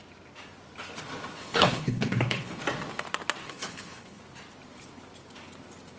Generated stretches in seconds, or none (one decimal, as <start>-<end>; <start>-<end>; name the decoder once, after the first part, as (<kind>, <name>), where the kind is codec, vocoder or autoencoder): 1.4-2.6 (codec, HILCodec); 3.4-4.2